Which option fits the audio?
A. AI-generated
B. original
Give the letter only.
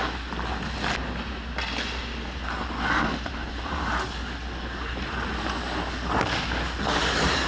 B